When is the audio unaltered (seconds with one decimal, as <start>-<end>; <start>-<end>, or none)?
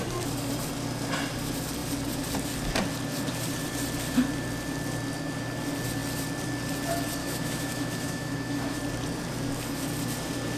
0.0-7.2; 8.8-10.6